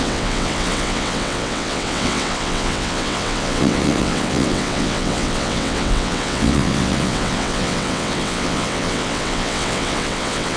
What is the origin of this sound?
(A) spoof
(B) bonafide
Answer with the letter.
A